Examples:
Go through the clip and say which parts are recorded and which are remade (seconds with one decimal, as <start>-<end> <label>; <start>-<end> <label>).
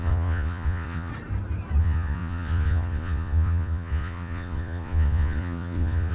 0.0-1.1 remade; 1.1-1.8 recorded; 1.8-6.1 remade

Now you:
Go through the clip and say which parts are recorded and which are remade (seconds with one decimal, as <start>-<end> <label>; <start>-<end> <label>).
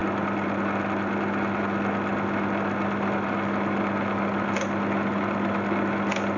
0.0-6.4 recorded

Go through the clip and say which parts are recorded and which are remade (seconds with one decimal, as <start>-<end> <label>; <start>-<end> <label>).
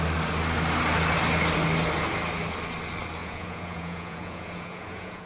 0.0-3.2 recorded; 3.2-5.3 remade